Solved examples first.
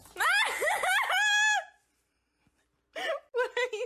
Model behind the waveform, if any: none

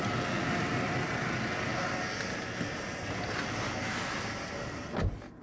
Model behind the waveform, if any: none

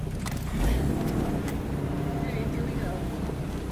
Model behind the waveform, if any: none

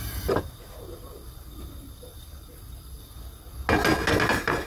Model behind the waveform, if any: none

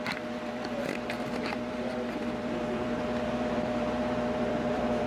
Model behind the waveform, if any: vocoder, BigVGAN v2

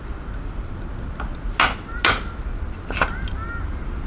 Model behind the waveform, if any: none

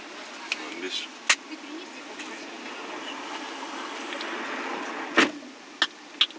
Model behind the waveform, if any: none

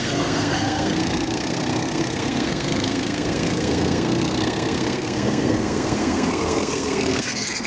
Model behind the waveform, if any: codec, SNAC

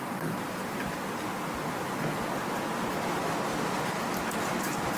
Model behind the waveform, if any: none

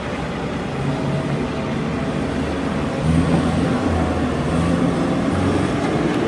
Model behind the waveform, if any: none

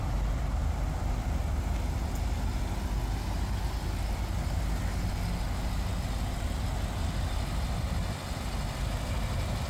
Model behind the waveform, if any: none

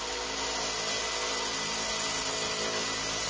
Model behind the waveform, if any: none